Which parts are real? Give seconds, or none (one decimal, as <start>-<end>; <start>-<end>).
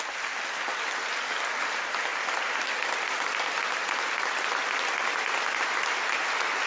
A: 0.0-6.7